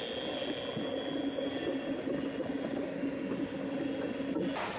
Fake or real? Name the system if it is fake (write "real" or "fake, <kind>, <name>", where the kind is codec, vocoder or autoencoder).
real